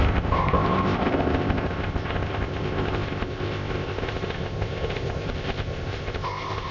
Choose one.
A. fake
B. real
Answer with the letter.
A